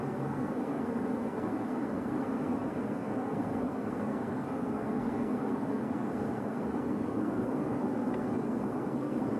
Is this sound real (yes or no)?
no